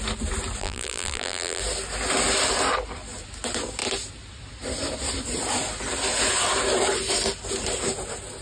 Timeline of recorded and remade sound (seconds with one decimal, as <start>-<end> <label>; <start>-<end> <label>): 0.0-0.6 recorded; 0.6-1.6 remade; 1.6-8.4 recorded